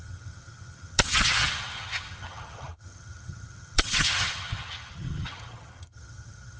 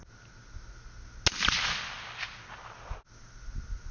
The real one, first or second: second